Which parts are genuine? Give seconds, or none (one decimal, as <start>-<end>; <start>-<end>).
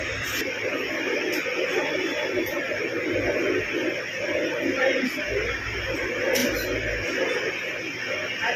0.0-8.6